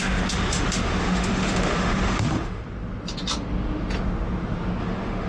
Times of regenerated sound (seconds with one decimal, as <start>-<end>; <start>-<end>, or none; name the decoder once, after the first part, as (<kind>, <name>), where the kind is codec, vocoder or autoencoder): 0.0-2.6 (autoencoder, DAC-VAE); 4.8-5.3